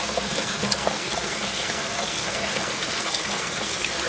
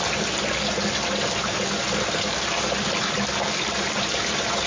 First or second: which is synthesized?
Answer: first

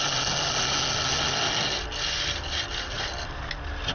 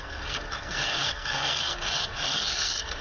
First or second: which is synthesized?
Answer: second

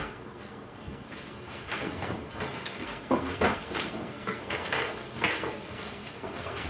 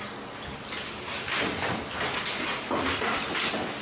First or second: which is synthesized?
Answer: first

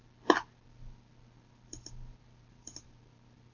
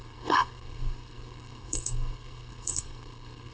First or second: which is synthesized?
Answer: second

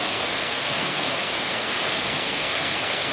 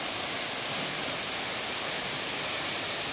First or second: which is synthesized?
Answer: first